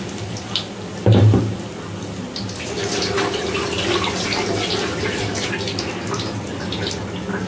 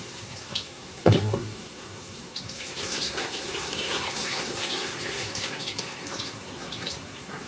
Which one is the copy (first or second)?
second